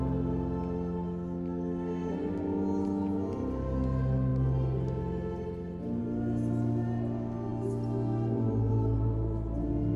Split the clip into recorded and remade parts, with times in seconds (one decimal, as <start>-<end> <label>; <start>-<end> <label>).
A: 0.0-10.0 recorded